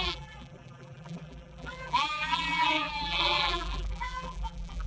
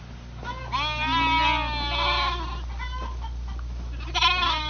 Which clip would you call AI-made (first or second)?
first